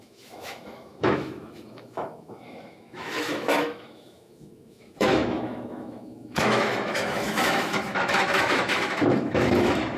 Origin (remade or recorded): remade